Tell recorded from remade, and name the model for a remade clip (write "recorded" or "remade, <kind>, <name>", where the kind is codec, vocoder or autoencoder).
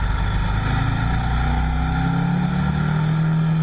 recorded